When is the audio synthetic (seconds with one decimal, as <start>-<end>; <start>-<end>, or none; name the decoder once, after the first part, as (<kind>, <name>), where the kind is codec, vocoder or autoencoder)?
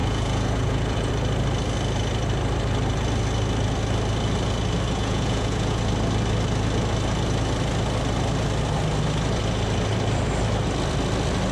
0.0-1.1 (vocoder, Vocos); 5.0-5.8